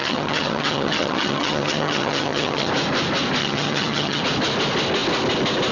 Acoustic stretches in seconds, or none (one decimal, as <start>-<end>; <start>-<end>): 2.7-3.4; 4.2-5.7